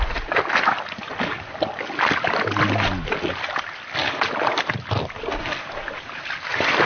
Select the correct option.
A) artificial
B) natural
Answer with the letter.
B